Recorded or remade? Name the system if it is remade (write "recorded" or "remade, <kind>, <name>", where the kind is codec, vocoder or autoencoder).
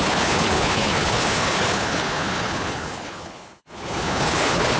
remade, codec, HILCodec